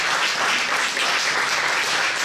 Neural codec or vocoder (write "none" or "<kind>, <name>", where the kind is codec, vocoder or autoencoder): none